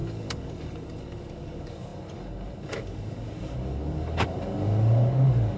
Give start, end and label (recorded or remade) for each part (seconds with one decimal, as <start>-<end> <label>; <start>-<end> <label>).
0.0-5.6 remade